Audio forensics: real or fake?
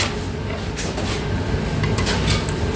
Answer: real